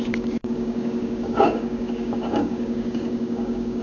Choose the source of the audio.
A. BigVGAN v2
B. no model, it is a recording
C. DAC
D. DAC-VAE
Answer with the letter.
C